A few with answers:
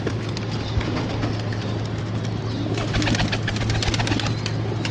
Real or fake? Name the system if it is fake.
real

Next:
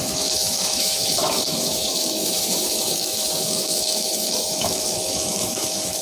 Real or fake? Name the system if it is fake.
fake, autoencoder, DAC-VAE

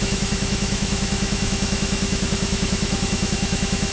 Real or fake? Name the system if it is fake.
fake, autoencoder, DAC-VAE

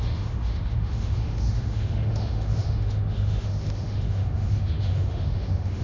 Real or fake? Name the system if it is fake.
fake, autoencoder, DAC-VAE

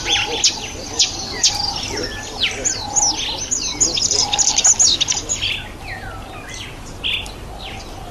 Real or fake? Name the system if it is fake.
real